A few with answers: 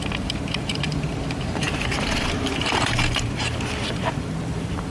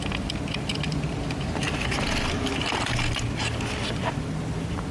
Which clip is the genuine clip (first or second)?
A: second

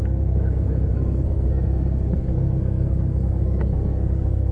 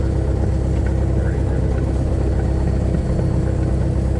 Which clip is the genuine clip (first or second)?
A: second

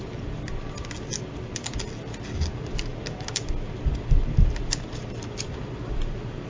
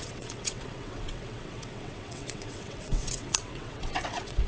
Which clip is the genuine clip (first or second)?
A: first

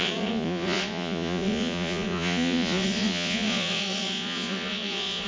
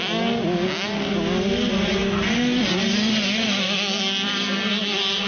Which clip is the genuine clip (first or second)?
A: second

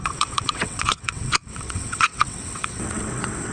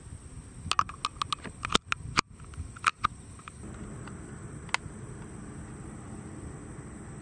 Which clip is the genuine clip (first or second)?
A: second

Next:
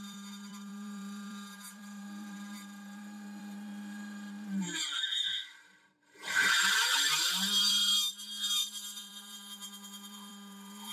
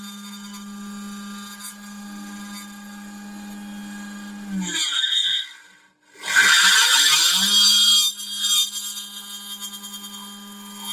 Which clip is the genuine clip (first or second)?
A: second